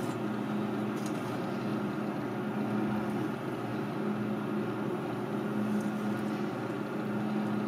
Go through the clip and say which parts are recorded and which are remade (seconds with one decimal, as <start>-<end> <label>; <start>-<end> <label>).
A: 0.0-1.7 recorded; 1.7-2.2 remade; 2.2-7.7 recorded